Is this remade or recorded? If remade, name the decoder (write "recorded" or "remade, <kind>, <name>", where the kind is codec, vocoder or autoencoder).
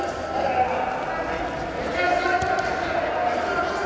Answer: recorded